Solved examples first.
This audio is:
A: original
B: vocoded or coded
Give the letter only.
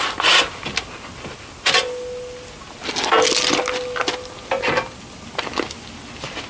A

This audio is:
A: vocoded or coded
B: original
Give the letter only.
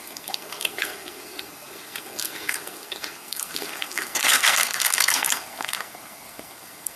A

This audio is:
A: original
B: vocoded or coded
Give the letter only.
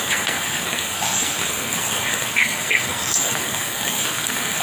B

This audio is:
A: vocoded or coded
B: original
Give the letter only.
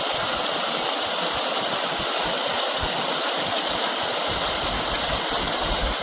B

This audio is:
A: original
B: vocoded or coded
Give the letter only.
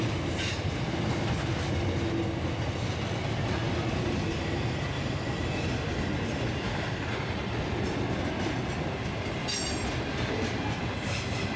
A